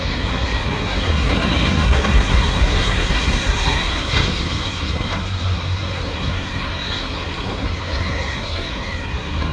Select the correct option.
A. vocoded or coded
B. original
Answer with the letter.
A